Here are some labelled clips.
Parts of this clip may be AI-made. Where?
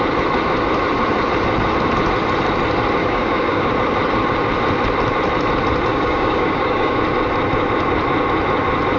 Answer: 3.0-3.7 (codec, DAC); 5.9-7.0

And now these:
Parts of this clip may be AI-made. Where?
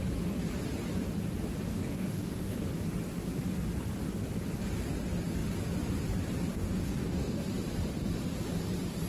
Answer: 1.7-2.6 (codec, DAC); 6.5-7.4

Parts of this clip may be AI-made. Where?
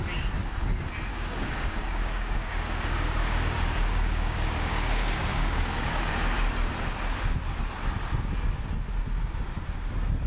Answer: 1.1-6.1 (codec, DAC)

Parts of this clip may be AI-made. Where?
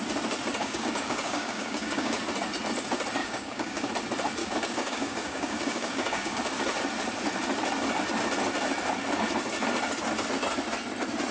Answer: 0.6-2.2 (codec, DAC); 3.2-3.9; 4.4-6.4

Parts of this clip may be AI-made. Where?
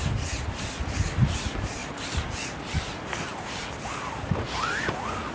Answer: none